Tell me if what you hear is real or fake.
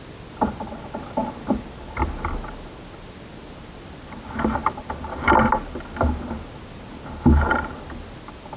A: real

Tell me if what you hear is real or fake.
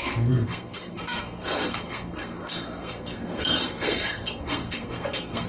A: fake